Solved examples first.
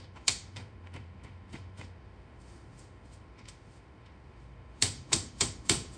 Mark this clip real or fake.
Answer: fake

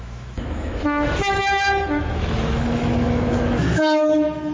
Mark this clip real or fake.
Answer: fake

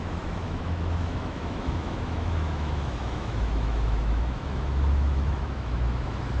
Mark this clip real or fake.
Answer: fake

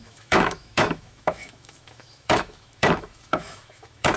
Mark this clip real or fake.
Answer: fake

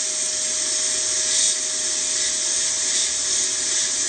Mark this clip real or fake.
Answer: real